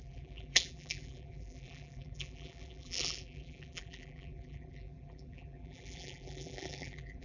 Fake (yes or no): yes